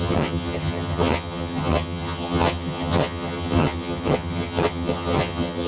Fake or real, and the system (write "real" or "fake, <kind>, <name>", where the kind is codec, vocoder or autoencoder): fake, vocoder, HiFi-GAN